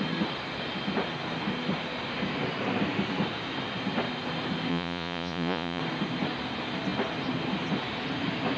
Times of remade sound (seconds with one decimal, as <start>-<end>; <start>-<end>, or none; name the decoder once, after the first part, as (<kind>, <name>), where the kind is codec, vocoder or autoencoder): 4.7-5.8 (vocoder, Vocos)